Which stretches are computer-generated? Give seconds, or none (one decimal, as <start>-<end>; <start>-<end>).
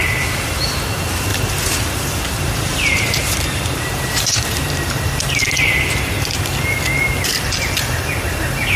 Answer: 1.3-5.2